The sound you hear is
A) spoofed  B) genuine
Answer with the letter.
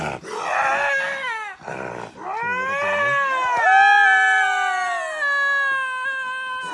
B